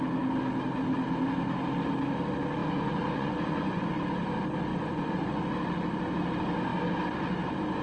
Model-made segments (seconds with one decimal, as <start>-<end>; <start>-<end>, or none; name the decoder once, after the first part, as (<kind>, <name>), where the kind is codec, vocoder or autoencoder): 2.6-3.9 (vocoder, Vocos); 4.7-5.4